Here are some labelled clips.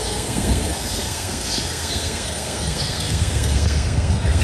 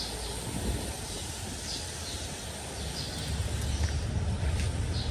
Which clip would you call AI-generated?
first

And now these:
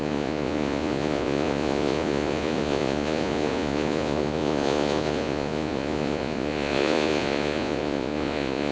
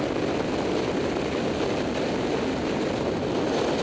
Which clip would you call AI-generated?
first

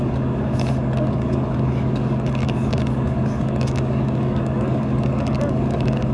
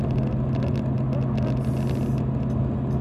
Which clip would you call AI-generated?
first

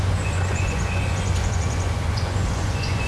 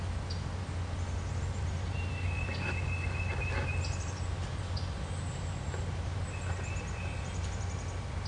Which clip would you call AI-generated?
first